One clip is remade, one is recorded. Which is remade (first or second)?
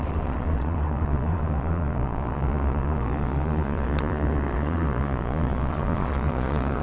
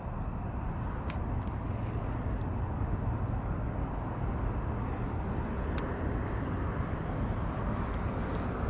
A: first